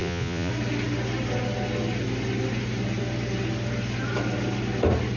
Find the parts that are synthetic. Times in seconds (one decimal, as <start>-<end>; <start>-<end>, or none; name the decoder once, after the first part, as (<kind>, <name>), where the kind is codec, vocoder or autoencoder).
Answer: 0.0-0.5 (vocoder, Vocos)

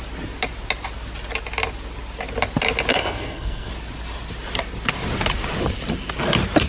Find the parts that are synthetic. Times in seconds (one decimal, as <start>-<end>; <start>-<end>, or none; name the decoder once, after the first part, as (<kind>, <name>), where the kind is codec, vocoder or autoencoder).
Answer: 2.9-3.7 (codec, SNAC)